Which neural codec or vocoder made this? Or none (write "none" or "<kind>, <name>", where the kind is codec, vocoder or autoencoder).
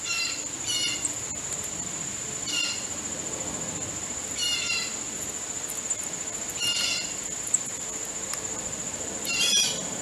none